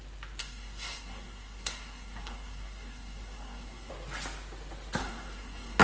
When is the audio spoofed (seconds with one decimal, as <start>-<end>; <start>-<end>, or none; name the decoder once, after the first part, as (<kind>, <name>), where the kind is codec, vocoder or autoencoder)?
0.4-3.9 (codec, SNAC); 5.0-5.8